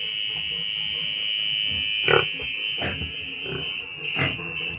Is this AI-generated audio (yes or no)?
no